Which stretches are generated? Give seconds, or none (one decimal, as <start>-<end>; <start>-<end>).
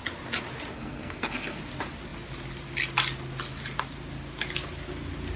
0.7-1.6